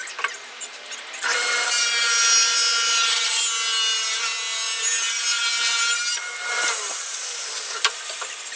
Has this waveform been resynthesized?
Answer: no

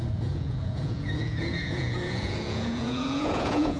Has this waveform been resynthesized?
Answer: yes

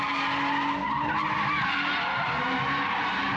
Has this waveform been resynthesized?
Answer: no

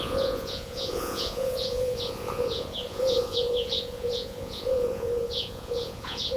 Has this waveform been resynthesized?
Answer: yes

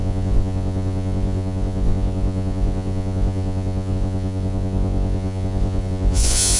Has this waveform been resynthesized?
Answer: yes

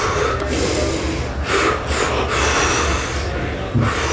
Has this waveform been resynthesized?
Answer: no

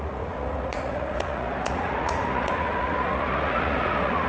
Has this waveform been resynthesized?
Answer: yes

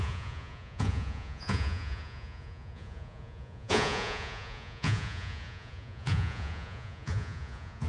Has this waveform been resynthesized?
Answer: yes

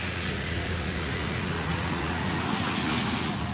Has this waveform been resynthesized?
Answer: yes